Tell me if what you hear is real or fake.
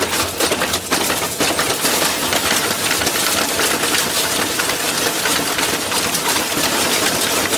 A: real